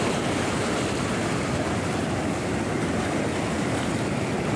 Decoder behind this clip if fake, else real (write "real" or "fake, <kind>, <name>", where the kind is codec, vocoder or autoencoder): real